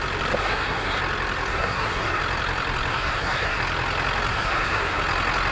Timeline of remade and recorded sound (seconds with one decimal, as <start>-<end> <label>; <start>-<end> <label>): 0.0-0.4 recorded; 0.4-1.0 remade; 1.0-1.5 recorded; 1.5-2.2 remade; 2.2-2.9 recorded; 2.9-3.6 remade; 3.6-4.3 recorded; 4.3-5.0 remade; 5.0-5.5 recorded